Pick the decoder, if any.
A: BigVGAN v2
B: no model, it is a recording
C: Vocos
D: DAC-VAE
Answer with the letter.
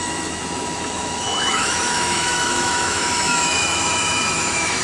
D